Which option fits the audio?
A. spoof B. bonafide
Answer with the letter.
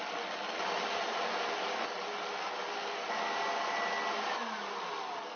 B